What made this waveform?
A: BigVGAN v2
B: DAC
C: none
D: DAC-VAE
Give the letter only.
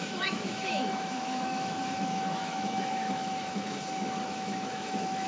D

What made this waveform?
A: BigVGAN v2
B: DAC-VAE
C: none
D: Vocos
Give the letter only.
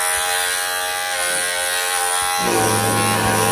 C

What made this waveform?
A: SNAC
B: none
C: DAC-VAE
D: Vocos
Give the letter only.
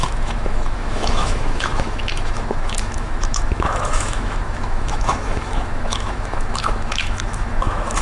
C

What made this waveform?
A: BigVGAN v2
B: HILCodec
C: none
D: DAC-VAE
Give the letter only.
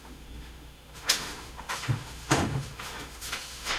D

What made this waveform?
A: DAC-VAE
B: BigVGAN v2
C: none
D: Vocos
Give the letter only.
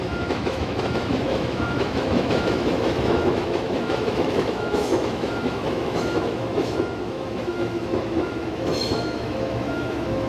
A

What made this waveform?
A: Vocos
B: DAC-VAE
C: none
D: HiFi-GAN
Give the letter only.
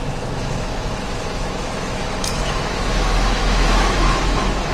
B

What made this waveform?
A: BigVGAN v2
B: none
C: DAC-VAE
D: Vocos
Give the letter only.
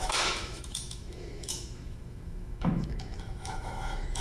C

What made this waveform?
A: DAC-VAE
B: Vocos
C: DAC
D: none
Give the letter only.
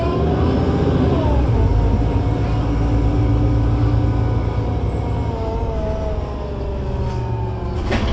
D